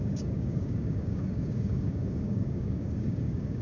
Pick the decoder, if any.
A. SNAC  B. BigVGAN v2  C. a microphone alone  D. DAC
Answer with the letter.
D